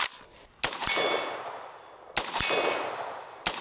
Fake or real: real